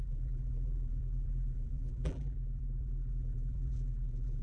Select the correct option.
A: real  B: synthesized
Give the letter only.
B